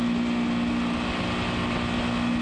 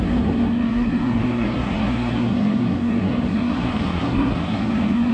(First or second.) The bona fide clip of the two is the first